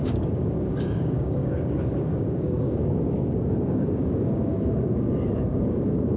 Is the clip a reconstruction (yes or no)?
yes